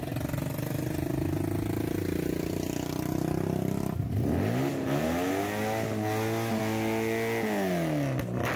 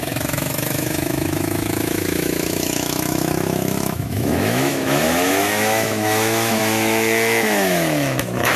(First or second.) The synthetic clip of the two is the second